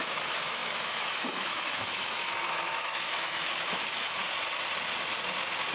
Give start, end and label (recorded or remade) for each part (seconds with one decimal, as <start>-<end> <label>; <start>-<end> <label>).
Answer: 0.0-4.2 remade; 4.2-5.7 recorded

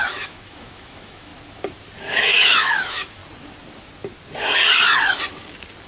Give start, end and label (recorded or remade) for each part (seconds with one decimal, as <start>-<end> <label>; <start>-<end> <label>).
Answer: 0.0-1.3 remade; 1.3-2.2 recorded; 2.2-3.2 remade; 3.2-5.9 recorded

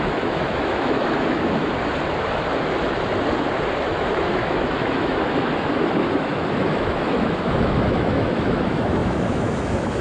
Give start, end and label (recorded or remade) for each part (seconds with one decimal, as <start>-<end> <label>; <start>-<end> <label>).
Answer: 0.0-1.7 remade; 1.7-3.9 recorded; 3.9-10.0 remade

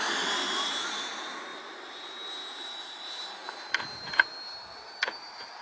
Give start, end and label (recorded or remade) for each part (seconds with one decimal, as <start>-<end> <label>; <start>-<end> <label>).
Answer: 0.0-5.6 recorded

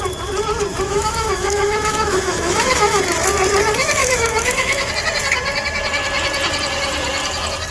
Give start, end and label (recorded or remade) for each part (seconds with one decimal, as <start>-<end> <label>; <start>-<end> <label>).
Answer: 0.0-0.7 recorded; 0.7-3.0 remade; 3.0-4.0 recorded; 4.0-4.9 remade; 4.9-7.7 recorded